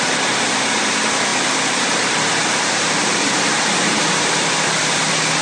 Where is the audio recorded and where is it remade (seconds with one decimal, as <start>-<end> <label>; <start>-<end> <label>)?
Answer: 0.0-1.3 recorded; 1.3-4.5 remade; 4.5-5.4 recorded